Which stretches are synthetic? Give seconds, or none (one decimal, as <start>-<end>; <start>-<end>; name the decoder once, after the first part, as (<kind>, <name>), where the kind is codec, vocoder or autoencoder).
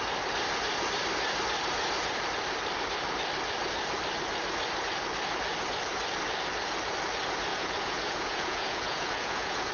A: 7.5-9.7 (vocoder, Vocos)